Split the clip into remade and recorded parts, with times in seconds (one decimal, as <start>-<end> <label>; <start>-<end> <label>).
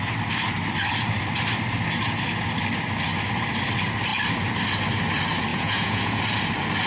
0.0-5.5 recorded; 5.5-6.2 remade; 6.2-6.9 recorded